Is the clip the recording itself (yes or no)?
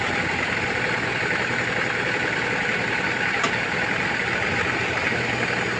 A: yes